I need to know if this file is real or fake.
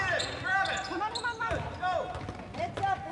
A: real